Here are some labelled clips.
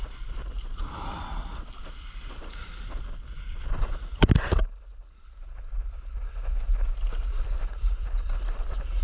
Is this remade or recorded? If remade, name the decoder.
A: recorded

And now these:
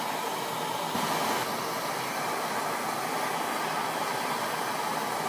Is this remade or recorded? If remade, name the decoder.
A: recorded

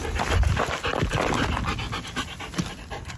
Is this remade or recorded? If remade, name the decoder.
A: recorded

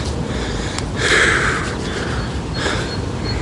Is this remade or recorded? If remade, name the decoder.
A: recorded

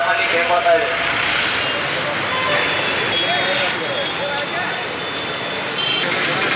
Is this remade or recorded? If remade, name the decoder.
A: recorded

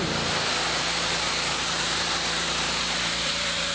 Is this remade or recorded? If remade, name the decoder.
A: remade, vocoder, BigVGAN v2